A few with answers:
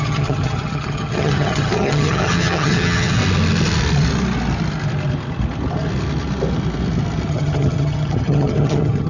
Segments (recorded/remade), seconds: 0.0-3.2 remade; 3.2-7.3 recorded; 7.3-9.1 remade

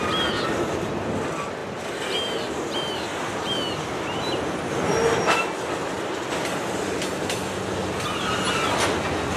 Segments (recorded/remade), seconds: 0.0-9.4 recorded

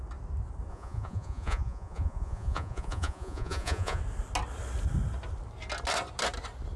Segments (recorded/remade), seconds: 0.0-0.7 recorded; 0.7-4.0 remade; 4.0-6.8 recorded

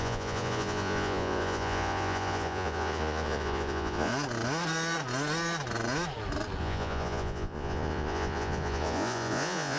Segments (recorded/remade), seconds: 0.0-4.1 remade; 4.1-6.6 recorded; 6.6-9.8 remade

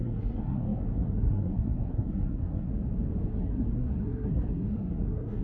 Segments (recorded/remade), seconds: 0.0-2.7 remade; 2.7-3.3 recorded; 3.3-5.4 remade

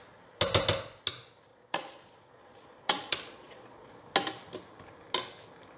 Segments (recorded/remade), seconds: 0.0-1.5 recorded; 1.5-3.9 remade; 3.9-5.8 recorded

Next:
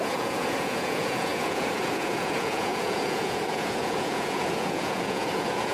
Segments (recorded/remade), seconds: 0.0-5.7 remade

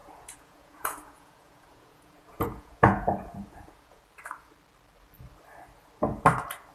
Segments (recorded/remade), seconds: 0.0-4.0 remade; 4.0-6.7 recorded